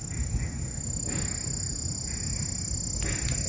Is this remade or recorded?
recorded